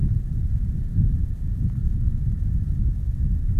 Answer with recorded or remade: remade